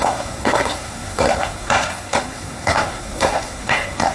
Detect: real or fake fake